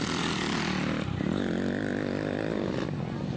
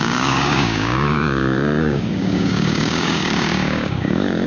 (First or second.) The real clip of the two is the first